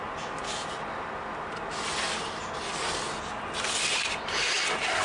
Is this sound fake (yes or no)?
no